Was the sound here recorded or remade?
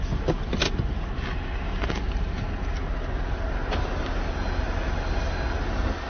recorded